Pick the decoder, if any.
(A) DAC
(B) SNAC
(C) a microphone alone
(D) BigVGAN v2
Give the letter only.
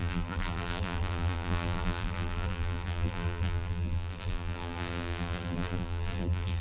D